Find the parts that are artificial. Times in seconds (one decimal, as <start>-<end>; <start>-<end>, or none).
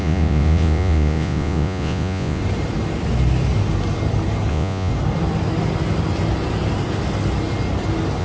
0.0-2.4; 4.5-4.9